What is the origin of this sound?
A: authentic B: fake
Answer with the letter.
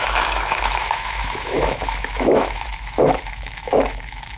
B